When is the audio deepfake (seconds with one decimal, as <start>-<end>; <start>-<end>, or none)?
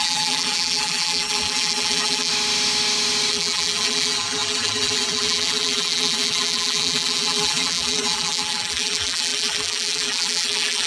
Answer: 0.0-2.3; 3.3-10.9